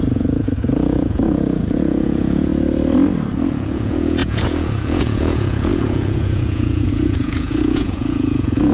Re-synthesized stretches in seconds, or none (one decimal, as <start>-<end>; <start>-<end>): 0.0-2.5; 3.5-8.7